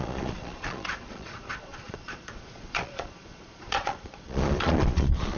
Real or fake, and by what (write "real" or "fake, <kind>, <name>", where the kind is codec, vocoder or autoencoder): fake, vocoder, Vocos